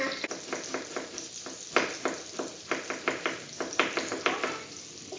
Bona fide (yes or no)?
yes